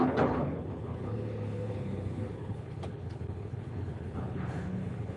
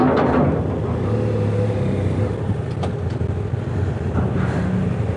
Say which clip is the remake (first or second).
first